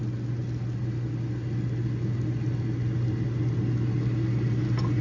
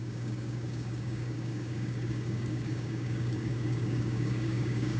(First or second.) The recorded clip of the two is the first